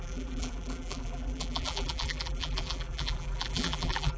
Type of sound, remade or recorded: remade